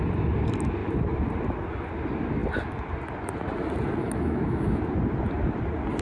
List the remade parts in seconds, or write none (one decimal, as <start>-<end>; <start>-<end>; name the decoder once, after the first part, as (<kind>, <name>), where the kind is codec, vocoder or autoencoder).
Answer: 4.0-4.8 (autoencoder, DAC-VAE)